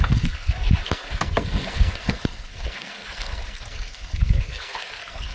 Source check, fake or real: fake